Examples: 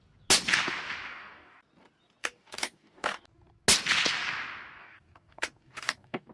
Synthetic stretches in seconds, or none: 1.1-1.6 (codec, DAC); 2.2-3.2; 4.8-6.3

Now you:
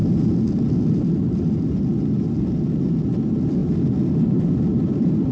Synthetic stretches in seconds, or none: none

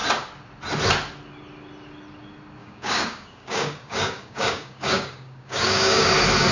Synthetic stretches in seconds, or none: 2.6-6.1 (codec, DAC)